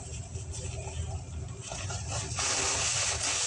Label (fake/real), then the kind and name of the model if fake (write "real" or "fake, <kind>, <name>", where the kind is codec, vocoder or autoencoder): real